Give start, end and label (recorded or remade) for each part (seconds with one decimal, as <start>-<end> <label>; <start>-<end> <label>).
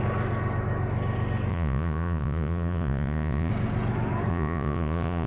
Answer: 0.0-1.5 recorded; 1.5-3.5 remade; 3.5-4.3 recorded; 4.3-5.3 remade